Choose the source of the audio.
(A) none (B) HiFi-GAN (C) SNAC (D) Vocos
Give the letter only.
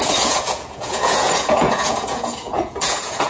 D